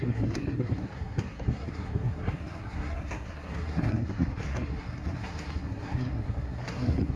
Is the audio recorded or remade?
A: remade